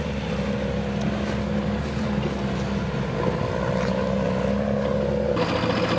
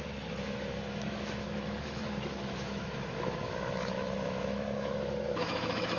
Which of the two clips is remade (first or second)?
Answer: second